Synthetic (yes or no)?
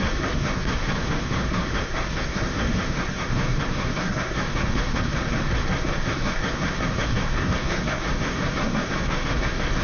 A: yes